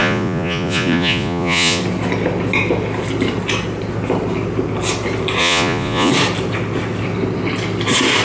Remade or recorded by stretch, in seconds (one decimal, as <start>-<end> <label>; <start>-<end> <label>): 0.0-1.8 remade; 1.8-5.4 recorded; 5.4-6.1 remade; 6.1-8.2 recorded